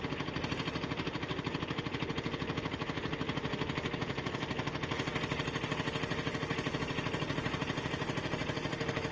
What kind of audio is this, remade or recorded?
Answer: recorded